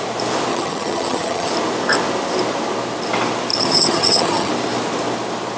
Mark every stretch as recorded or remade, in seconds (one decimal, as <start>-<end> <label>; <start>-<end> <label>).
0.0-0.5 recorded; 0.5-1.5 remade; 1.5-3.5 recorded; 3.5-4.5 remade; 4.5-5.6 recorded